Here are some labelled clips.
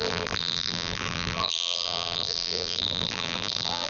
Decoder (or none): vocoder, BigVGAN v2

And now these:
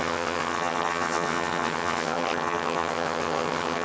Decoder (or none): vocoder, HiFi-GAN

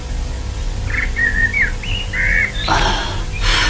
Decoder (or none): none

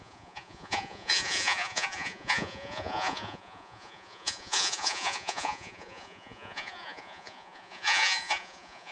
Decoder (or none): vocoder, Vocos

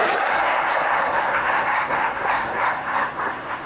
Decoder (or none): codec, SNAC